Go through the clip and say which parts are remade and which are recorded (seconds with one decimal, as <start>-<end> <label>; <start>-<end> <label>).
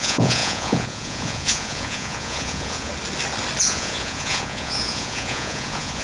0.0-2.9 remade; 2.9-3.6 recorded; 3.6-6.0 remade